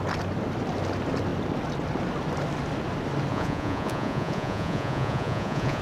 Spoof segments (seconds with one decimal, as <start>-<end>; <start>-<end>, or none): 3.3-5.8